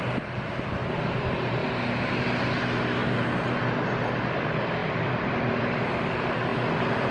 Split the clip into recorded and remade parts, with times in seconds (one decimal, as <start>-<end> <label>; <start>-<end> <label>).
0.0-4.8 recorded; 4.8-6.1 remade; 6.1-6.5 recorded; 6.5-7.1 remade